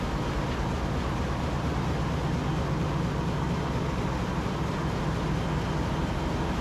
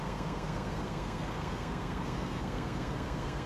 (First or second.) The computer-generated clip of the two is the second